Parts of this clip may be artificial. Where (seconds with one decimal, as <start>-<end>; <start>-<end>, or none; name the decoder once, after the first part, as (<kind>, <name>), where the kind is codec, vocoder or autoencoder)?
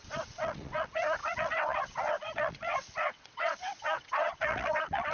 0.0-5.1 (vocoder, WaveNeXt)